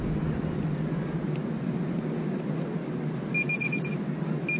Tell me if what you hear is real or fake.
real